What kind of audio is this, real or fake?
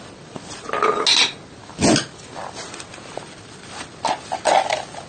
real